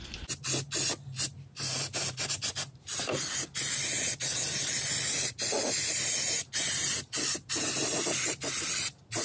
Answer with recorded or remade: recorded